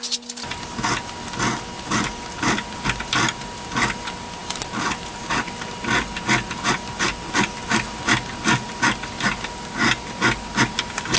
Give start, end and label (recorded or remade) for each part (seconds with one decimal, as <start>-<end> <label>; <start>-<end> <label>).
0.0-11.2 recorded